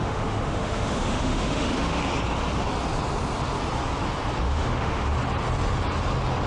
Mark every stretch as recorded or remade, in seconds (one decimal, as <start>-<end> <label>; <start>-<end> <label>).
0.0-2.0 remade; 2.0-4.4 recorded; 4.4-5.1 remade; 5.1-6.5 recorded